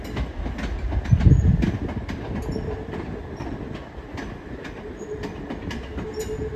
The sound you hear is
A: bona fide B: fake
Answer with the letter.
A